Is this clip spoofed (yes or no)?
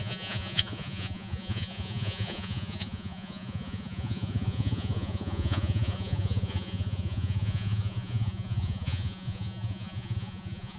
yes